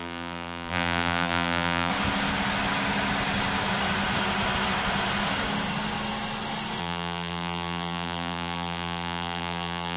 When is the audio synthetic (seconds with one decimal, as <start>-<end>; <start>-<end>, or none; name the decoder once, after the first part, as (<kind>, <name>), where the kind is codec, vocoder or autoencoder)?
0.0-1.9 (vocoder, BigVGAN v2); 6.8-10.0